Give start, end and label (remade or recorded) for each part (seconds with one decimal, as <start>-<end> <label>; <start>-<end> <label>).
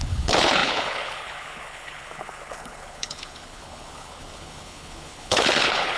0.0-6.0 remade